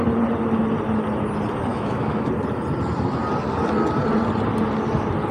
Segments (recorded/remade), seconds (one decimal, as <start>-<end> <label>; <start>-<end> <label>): 0.0-1.7 recorded; 1.7-2.3 remade; 2.3-5.3 recorded